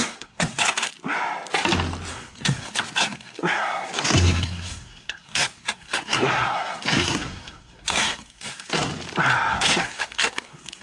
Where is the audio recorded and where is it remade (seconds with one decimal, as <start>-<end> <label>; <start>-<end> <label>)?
0.0-0.9 remade; 0.9-2.1 recorded; 2.1-8.9 remade; 8.9-9.5 recorded; 9.5-10.8 remade